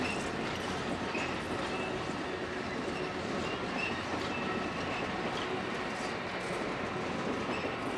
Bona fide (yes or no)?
yes